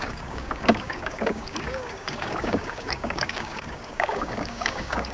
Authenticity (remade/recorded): remade